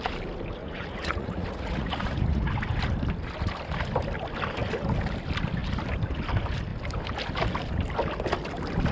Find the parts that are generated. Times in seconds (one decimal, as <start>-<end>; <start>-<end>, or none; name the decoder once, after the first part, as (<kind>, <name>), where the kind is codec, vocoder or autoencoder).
0.6-2.5 (vocoder, Vocos)